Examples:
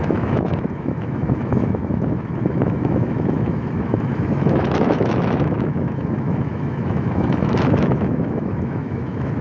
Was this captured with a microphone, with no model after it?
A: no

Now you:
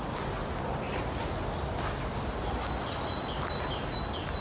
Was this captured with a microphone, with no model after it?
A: yes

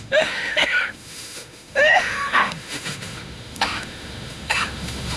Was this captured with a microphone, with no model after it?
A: no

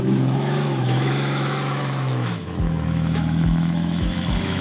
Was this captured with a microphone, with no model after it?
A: no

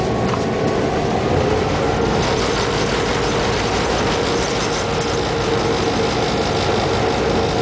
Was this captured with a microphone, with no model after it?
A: yes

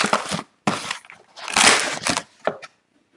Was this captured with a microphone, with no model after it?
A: yes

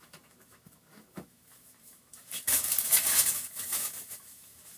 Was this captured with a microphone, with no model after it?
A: no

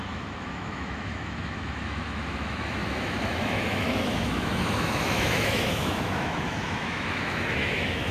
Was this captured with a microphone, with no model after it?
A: no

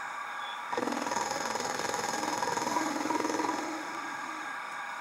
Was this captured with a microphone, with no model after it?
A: no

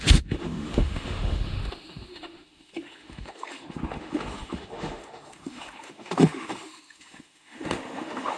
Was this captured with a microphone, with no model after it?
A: no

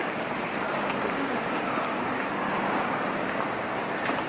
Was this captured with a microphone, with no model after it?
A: yes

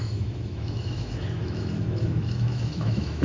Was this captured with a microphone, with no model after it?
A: no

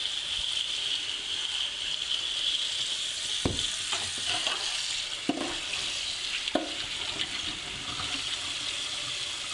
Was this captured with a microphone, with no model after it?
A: yes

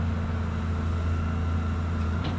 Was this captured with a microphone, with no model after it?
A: yes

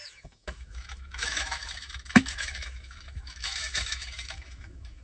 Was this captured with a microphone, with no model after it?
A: no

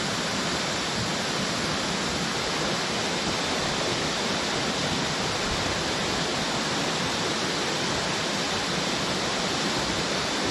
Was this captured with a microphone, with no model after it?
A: yes